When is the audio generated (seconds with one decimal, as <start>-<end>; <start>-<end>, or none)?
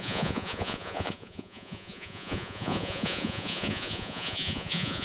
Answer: 0.0-5.0